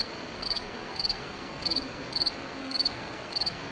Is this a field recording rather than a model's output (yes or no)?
no